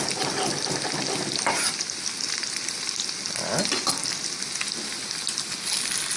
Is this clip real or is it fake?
real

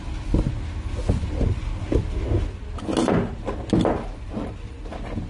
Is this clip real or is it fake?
real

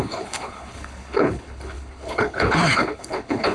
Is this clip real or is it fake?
fake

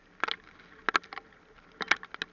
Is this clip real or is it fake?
real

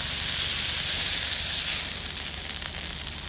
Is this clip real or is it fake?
real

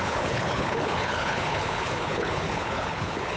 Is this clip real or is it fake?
fake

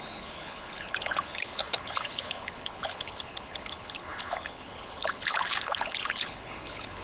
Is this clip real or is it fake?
fake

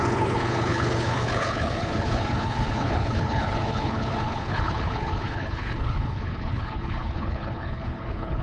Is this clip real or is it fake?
fake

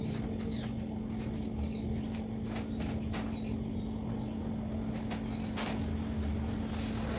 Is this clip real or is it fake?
real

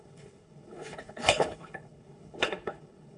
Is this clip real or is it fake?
fake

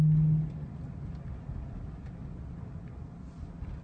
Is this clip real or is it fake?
real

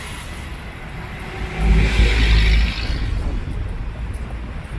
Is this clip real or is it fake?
real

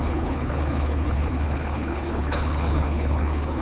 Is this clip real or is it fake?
fake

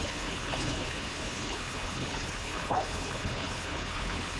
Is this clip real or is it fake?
fake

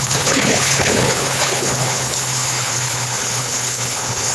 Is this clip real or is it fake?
fake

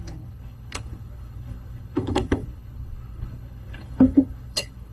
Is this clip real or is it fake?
fake